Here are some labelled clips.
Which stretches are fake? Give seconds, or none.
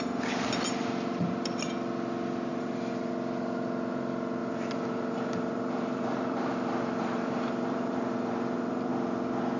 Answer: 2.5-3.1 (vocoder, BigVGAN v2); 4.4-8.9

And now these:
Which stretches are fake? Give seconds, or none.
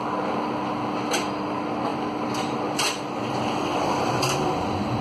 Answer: 1.9-5.0 (vocoder, BigVGAN v2)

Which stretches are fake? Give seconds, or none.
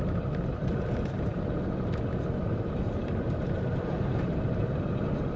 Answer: 2.4-4.6 (vocoder, BigVGAN v2)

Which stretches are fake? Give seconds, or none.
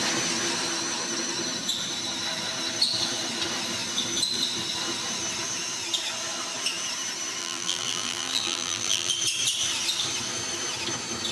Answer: 7.4-9.1 (vocoder, BigVGAN v2)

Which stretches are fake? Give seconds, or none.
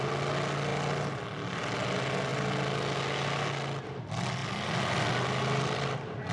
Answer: none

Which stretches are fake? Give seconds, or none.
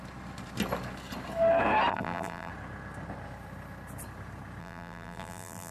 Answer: 1.9-2.5 (vocoder, BigVGAN v2); 4.6-5.7